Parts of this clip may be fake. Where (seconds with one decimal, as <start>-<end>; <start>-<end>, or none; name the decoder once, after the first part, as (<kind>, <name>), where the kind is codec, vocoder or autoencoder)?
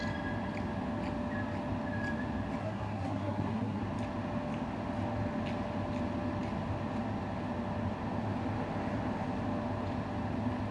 2.6-3.8 (codec, SNAC)